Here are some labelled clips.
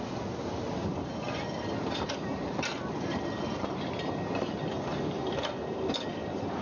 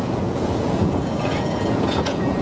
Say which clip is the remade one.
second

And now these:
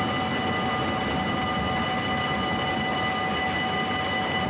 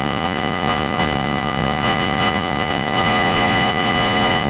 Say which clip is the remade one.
second